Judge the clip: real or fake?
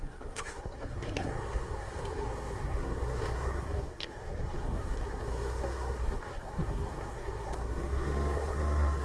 fake